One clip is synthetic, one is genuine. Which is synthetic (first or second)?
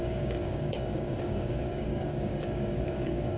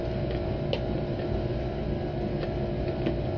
first